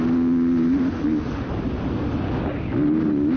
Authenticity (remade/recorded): recorded